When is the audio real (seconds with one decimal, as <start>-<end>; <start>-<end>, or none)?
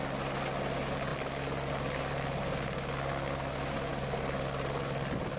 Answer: 0.0-5.4